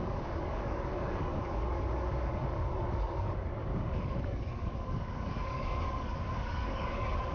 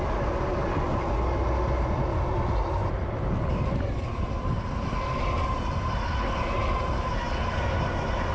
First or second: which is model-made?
first